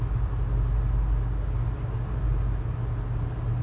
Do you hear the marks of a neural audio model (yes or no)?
no